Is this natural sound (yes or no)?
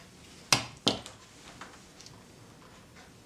yes